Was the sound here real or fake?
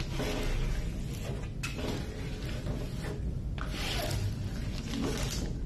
real